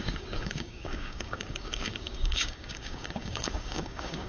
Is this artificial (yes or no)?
yes